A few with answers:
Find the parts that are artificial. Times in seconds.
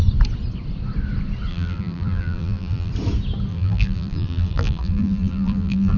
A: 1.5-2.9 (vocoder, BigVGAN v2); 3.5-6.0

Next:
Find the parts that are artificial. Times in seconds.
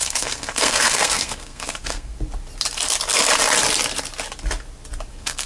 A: 0.0-2.1 (codec, SNAC); 5.1-5.5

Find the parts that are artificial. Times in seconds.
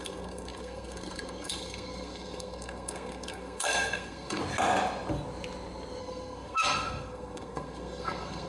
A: 0.0-4.4 (codec, SNAC); 6.0-8.5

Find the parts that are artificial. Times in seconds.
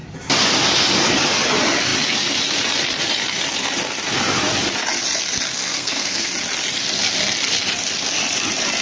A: 5.5-6.3 (codec, SNAC)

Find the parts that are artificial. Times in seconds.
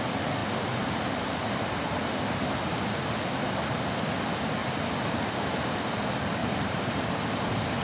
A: 6.4-7.0 (vocoder, BigVGAN v2)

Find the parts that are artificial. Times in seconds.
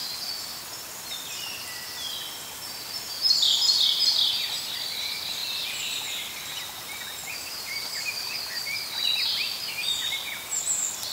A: none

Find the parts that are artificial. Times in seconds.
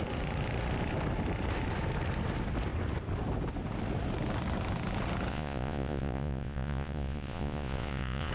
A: 5.3-8.3 (vocoder, Vocos)